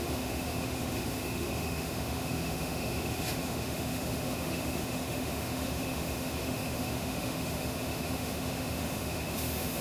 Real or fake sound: fake